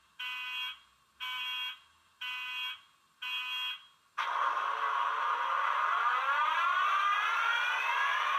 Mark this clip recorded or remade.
recorded